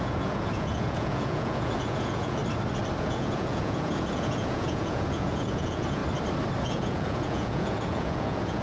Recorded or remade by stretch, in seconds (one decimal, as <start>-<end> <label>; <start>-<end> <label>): 0.0-2.4 remade; 2.4-3.0 recorded; 3.0-6.0 remade; 6.0-6.6 recorded; 6.6-8.6 remade